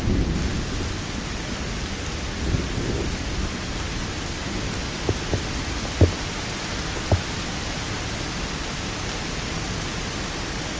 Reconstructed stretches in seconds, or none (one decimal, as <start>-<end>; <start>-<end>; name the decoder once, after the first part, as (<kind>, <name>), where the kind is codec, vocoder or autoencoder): none